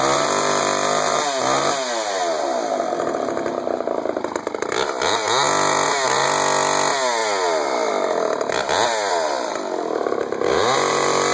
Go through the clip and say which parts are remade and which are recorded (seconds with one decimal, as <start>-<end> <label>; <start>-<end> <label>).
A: 0.0-11.3 recorded